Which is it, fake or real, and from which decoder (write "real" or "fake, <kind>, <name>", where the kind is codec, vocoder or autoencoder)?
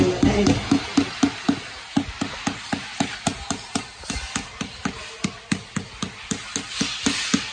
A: real